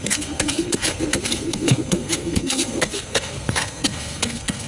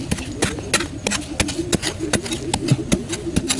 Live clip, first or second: second